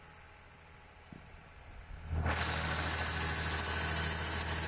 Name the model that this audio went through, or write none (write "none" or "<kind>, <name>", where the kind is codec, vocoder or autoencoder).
none